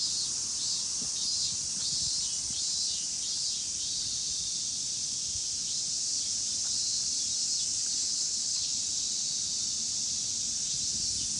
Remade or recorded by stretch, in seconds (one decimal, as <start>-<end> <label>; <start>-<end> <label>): 0.0-8.1 recorded; 8.1-8.8 remade; 8.8-11.4 recorded